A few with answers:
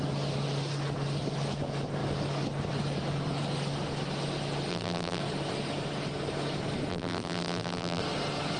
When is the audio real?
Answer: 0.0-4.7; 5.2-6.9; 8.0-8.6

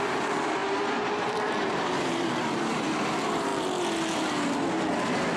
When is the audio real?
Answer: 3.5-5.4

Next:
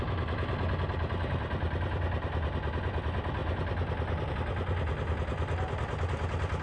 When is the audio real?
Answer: 0.0-6.6

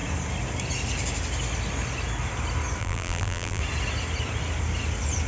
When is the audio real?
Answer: 0.0-2.8; 3.6-5.3

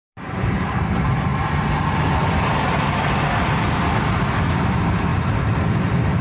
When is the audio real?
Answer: 1.3-4.4; 5.1-6.2